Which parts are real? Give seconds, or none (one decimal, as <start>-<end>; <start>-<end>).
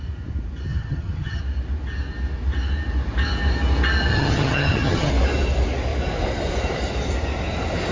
0.0-0.7; 1.4-4.1; 5.1-7.9